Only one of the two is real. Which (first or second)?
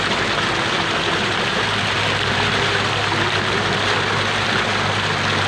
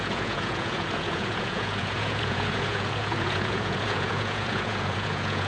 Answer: first